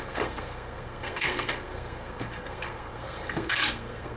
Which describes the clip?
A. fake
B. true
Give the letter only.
A